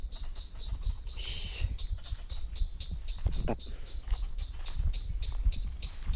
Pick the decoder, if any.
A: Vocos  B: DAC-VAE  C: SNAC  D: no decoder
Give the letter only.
D